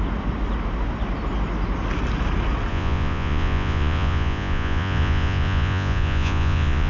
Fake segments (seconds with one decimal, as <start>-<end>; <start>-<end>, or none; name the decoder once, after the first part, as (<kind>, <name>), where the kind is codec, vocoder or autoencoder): 2.7-6.9 (vocoder, Vocos)